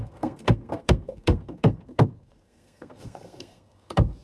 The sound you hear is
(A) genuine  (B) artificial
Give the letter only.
B